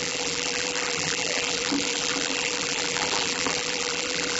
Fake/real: fake